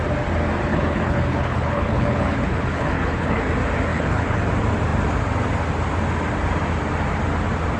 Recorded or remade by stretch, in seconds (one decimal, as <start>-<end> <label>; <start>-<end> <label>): 0.0-0.7 recorded; 0.7-3.5 remade; 3.5-3.9 recorded; 3.9-4.4 remade; 4.4-7.8 recorded